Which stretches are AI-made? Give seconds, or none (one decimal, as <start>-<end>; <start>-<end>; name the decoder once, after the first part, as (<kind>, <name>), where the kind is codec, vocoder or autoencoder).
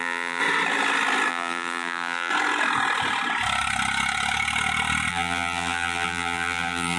0.0-0.4 (vocoder, BigVGAN v2); 1.3-2.3; 5.1-7.0